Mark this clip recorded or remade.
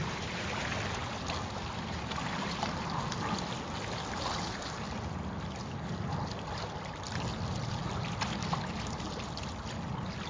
recorded